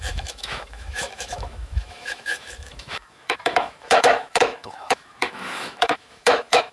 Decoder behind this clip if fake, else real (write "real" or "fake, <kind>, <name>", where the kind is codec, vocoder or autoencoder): fake, autoencoder, DAC-VAE